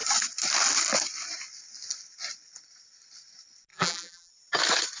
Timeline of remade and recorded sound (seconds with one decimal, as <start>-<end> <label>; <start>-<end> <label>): 0.0-3.7 recorded; 3.7-4.3 remade; 4.3-5.0 recorded